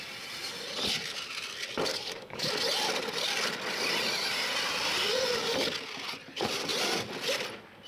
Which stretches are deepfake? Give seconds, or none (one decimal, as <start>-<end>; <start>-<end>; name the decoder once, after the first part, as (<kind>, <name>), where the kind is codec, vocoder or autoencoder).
1.9-2.5 (codec, DAC)